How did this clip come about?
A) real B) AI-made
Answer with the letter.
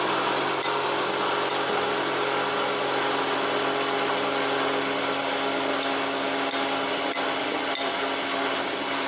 A